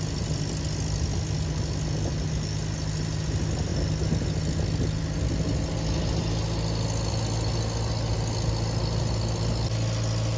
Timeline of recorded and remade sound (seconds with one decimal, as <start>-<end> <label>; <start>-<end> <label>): 0.0-10.4 recorded